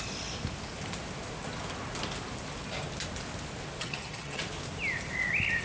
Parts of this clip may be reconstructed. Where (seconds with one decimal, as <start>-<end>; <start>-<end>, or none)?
3.8-4.4